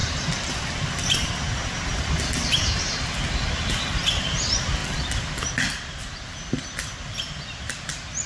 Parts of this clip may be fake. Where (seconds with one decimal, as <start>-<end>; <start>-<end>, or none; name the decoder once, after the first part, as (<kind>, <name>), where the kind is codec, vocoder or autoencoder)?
none